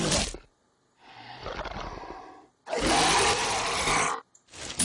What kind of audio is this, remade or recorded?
recorded